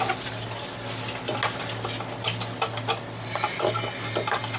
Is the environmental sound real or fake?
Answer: real